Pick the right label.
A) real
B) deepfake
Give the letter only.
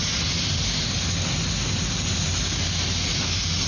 A